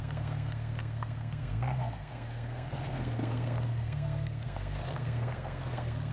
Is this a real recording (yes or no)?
no